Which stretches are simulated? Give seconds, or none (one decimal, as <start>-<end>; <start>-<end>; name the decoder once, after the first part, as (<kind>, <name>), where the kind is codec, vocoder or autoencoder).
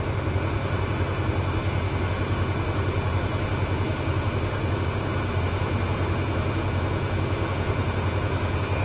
none